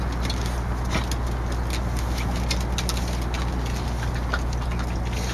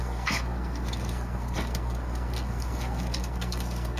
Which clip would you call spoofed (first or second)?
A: second